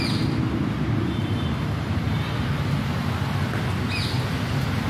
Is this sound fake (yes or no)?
no